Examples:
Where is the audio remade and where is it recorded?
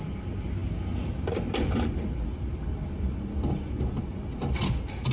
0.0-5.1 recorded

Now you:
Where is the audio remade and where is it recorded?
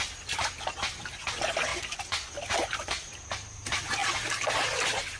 0.0-1.7 recorded; 1.7-2.3 remade; 2.3-5.2 recorded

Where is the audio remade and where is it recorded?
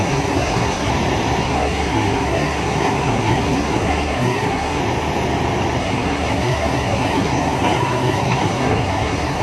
0.0-0.9 remade; 0.9-1.4 recorded; 1.4-4.8 remade; 4.8-5.8 recorded; 5.8-9.4 remade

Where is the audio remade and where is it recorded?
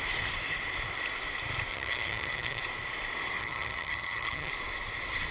0.0-1.7 recorded; 1.7-2.6 remade; 2.6-3.4 recorded; 3.4-4.5 remade; 4.5-5.3 recorded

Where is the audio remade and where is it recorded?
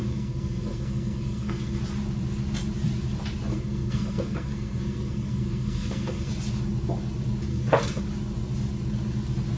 0.0-1.8 remade; 1.8-3.5 recorded; 3.5-6.3 remade; 6.3-7.5 recorded; 7.5-8.0 remade; 8.0-9.6 recorded